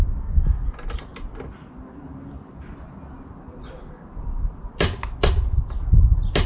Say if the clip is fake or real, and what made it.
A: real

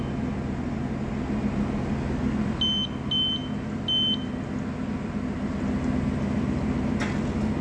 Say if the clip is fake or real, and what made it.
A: real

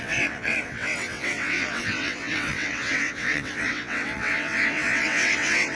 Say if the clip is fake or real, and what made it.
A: fake, vocoder, WaveNeXt